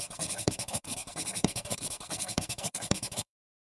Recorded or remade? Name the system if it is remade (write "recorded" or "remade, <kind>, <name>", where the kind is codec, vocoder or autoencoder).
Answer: remade, codec, SNAC